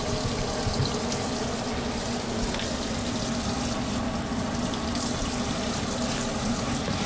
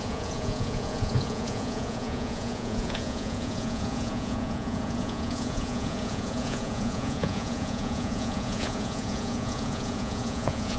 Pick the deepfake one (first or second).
second